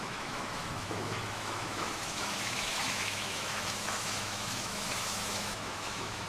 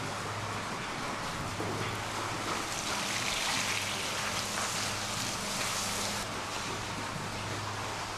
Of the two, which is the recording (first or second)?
second